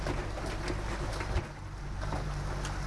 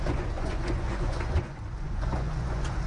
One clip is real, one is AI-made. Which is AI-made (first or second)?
second